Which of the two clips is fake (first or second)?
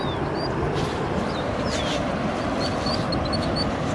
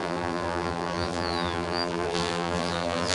second